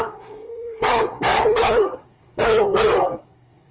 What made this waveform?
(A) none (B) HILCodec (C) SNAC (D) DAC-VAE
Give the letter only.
C